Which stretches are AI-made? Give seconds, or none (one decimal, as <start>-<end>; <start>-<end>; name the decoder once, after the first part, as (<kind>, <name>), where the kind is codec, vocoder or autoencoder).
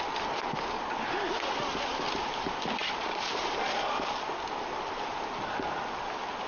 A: 2.8-3.4 (vocoder, BigVGAN v2)